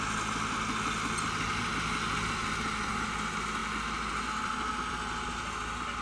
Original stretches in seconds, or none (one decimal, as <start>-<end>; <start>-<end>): 0.0-6.0